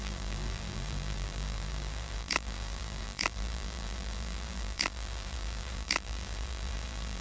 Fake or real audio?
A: fake